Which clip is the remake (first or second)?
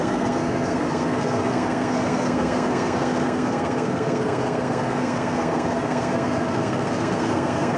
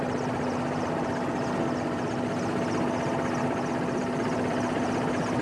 first